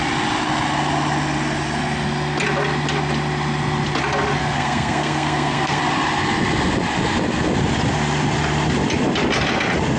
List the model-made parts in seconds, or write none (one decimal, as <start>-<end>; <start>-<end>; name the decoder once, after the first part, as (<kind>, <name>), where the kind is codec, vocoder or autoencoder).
4.4-5.8 (codec, SNAC)